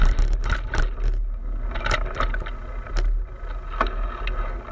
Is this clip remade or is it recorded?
recorded